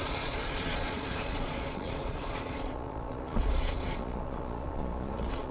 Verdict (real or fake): fake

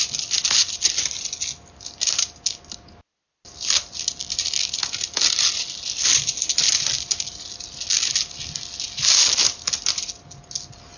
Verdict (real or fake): real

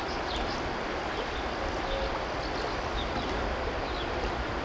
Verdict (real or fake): real